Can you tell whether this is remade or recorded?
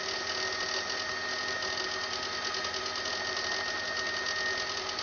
recorded